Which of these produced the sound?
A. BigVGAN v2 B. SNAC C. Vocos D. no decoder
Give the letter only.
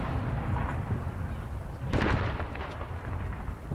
A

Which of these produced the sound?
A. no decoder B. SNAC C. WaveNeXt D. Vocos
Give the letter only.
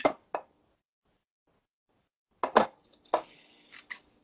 A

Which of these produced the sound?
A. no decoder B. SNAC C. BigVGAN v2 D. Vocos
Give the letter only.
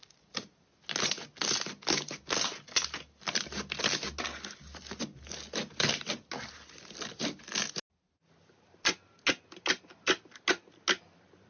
A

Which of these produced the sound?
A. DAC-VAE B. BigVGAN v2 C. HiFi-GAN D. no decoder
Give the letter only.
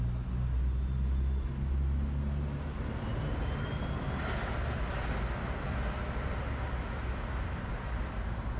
D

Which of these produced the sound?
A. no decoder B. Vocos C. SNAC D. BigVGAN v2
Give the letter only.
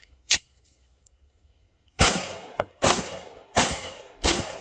C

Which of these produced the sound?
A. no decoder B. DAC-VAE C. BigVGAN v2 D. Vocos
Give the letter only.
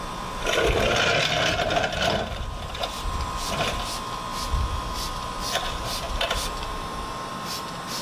A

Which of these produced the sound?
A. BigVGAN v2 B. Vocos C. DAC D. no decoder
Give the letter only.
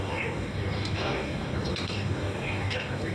C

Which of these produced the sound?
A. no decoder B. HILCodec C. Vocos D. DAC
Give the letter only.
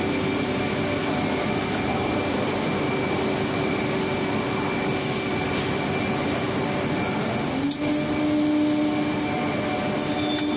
A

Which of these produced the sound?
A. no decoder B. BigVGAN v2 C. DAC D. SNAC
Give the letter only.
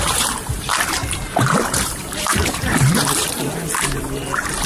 B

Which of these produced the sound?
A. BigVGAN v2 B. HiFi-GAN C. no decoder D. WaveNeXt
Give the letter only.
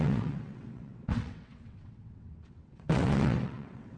D